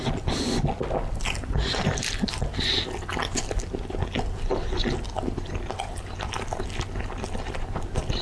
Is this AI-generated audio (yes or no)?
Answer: no